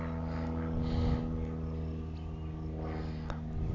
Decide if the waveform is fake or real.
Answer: real